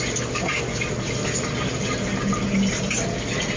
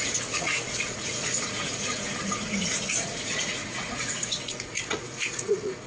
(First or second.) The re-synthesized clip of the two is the second